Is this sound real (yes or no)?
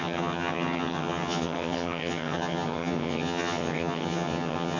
no